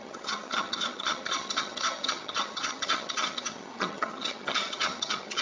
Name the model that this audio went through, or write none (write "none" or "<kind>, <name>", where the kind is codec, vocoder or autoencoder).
vocoder, HiFi-GAN